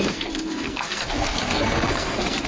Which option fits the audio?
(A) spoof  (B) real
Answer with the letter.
A